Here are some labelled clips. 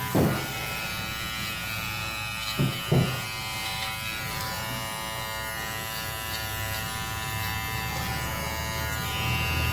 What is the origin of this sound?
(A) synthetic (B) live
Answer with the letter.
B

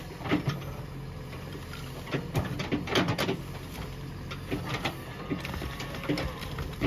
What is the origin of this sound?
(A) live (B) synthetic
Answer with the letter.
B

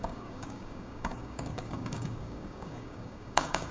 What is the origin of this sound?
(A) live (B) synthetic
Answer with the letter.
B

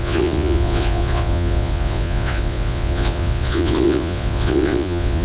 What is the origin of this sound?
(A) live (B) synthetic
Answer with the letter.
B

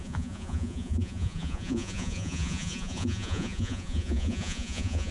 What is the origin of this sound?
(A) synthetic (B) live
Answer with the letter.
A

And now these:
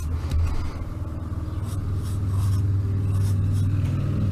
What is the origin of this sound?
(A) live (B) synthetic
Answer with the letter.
A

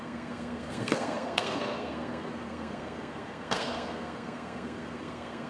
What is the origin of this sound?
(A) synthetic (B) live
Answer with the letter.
A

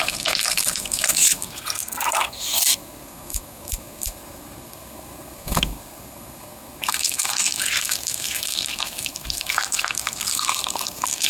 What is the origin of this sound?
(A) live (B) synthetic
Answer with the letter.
B